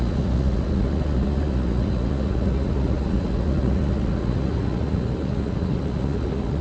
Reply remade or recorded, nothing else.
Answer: remade